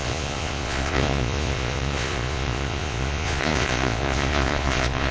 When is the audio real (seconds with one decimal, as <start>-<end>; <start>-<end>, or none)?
none

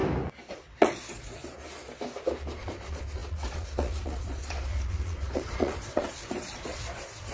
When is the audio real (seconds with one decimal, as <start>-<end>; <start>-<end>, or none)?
0.0-0.5; 1.4-2.6

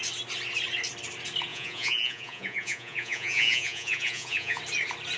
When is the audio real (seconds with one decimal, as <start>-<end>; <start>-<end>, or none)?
0.0-1.5; 4.6-5.2

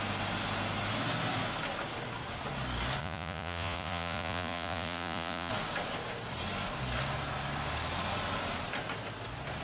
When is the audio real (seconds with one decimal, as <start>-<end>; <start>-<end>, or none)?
0.0-3.0; 5.5-9.6

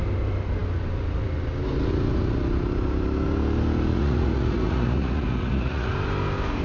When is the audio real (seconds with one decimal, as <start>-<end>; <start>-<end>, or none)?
0.0-3.9; 5.9-6.6